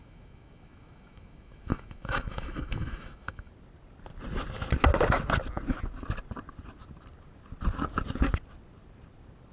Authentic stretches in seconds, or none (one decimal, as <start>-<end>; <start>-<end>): 3.5-9.5